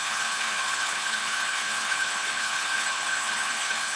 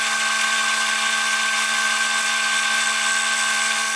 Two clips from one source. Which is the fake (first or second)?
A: first